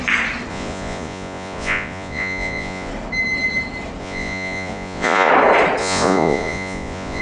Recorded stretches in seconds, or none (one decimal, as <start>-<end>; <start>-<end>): 0.0-0.5; 2.9-4.0; 5.3-5.8